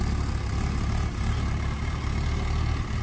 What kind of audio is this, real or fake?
real